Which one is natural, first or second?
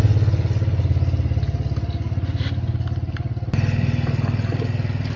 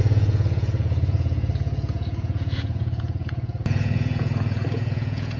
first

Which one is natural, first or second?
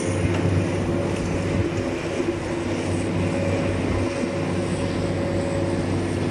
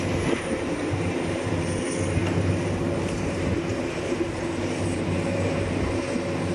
first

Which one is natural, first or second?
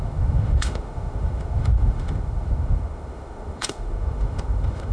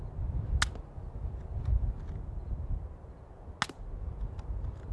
second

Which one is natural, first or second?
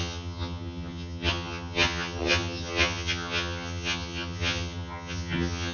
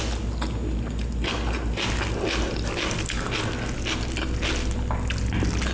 second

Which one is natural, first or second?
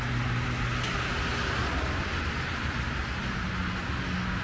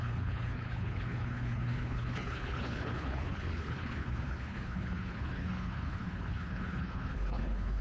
first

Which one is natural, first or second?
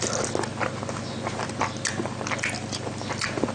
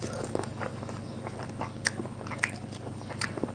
first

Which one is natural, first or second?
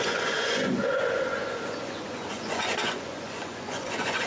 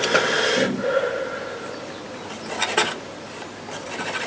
second